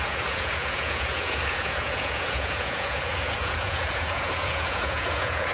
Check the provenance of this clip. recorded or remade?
remade